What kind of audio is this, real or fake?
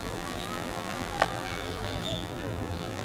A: fake